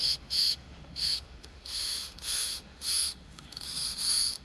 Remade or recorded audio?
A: remade